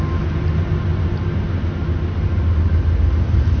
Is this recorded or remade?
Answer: recorded